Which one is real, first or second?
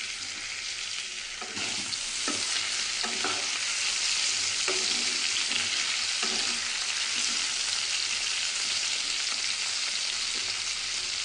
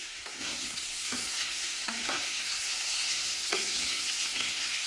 first